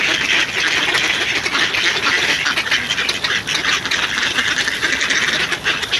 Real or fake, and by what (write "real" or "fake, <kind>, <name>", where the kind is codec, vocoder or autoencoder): real